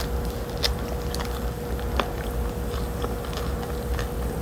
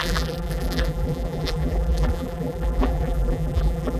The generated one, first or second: second